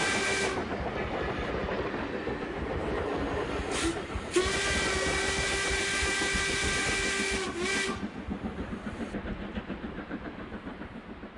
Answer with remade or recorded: recorded